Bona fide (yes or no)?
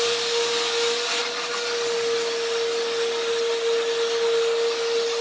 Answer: yes